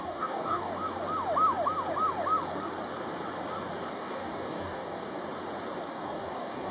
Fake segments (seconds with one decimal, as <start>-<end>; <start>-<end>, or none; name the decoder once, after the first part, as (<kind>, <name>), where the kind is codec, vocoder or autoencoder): 0.0-0.7 (codec, DAC); 3.9-5.2; 5.9-6.7